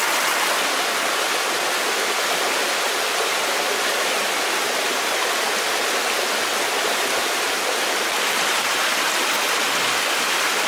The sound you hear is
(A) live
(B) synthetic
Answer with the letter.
A